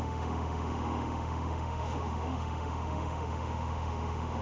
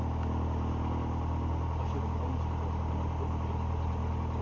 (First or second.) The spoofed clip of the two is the first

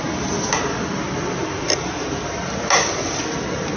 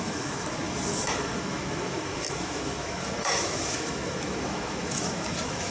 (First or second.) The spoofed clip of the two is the second